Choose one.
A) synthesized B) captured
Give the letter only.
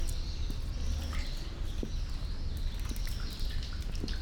B